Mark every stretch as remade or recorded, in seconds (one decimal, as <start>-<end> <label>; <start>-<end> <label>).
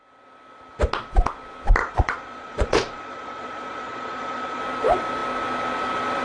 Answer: 0.0-1.8 recorded; 1.8-4.6 remade; 4.6-6.2 recorded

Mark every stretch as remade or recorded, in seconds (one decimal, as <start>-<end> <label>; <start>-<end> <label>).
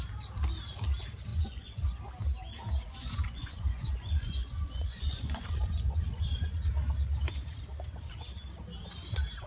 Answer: 0.0-1.3 recorded; 1.3-2.0 remade; 2.0-2.9 recorded; 2.9-6.7 remade; 6.7-9.5 recorded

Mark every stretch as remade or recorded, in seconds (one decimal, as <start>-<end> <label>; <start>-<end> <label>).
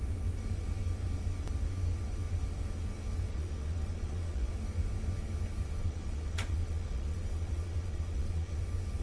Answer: 0.0-3.3 recorded; 3.3-4.5 remade; 4.5-5.8 recorded; 5.8-8.6 remade; 8.6-9.0 recorded